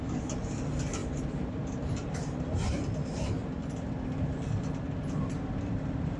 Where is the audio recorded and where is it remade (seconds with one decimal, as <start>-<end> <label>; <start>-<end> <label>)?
0.0-1.0 recorded; 1.0-2.1 remade; 2.1-6.2 recorded

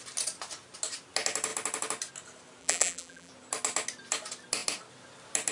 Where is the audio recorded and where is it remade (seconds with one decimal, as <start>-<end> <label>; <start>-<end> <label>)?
0.0-2.6 recorded; 2.6-3.3 remade; 3.3-5.5 recorded

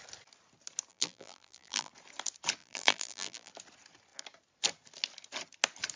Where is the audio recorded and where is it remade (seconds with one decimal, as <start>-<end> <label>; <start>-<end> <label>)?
0.0-0.9 recorded; 0.9-1.9 remade; 1.9-2.6 recorded; 2.6-3.5 remade; 3.5-6.0 recorded

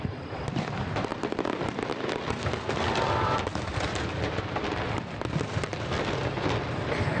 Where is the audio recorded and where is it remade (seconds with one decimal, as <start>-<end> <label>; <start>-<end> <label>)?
0.0-1.1 recorded; 1.1-3.9 remade; 3.9-5.7 recorded; 5.7-7.2 remade